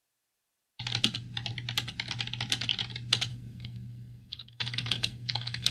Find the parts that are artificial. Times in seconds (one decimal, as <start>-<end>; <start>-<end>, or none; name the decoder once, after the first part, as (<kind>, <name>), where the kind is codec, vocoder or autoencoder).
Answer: 3.3-5.7 (codec, SNAC)